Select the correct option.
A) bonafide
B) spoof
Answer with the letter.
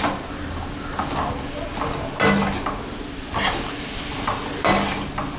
A